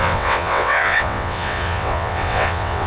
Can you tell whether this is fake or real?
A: fake